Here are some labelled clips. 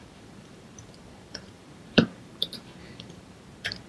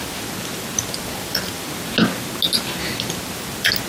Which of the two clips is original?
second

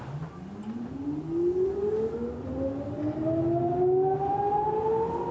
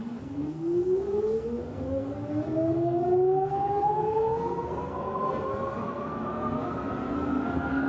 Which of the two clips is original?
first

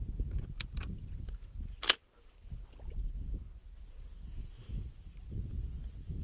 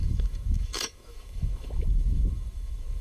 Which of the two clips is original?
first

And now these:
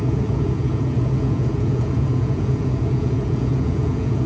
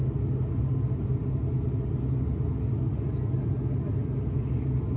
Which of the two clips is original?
second